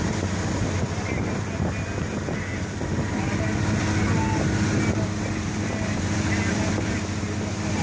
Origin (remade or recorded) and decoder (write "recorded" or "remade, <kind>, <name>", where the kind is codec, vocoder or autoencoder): recorded